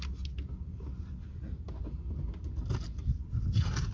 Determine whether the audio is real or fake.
real